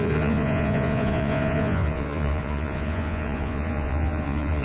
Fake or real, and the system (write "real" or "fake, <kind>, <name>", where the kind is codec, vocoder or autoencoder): fake, vocoder, Vocos